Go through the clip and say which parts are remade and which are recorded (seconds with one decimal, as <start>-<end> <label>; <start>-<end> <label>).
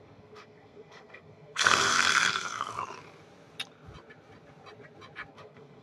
0.0-2.7 remade; 2.7-5.3 recorded; 5.3-5.8 remade